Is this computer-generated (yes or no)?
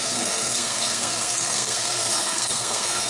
yes